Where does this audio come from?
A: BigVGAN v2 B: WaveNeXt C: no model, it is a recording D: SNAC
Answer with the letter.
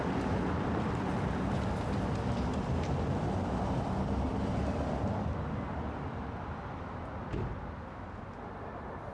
C